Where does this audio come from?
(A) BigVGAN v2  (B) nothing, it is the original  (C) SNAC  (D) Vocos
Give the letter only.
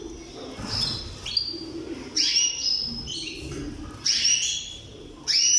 B